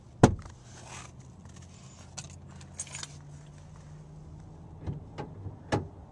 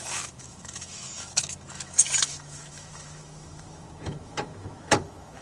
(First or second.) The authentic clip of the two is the first